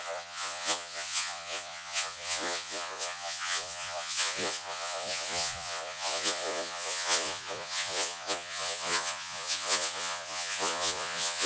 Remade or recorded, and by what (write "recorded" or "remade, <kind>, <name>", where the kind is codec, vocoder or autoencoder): remade, vocoder, Vocos